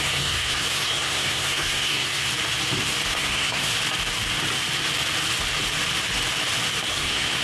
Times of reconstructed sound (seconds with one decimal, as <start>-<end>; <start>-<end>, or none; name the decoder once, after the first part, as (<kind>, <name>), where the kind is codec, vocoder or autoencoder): 0.0-2.3 (codec, SNAC); 3.1-3.7; 6.9-7.4